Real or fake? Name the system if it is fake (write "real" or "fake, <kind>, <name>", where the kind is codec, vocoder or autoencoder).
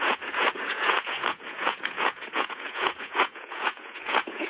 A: fake, vocoder, Vocos